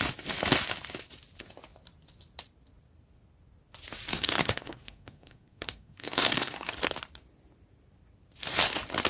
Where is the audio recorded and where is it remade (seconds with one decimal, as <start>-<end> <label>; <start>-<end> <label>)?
0.0-4.1 recorded; 4.1-6.7 remade; 6.7-9.1 recorded